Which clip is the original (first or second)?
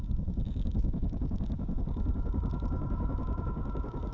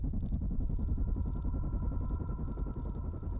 second